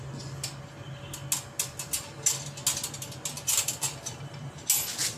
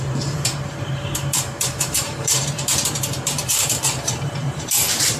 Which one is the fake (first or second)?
second